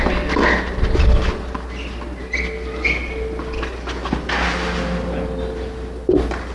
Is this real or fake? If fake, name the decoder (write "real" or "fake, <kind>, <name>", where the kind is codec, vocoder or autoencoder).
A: real